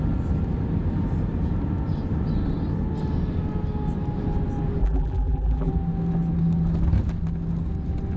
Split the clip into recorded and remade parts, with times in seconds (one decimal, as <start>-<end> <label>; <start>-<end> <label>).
0.0-4.8 recorded; 4.8-5.7 remade; 5.7-8.2 recorded